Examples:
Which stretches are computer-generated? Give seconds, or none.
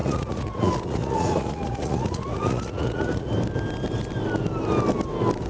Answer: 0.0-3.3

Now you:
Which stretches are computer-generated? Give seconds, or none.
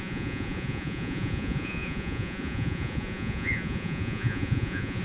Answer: 0.0-5.0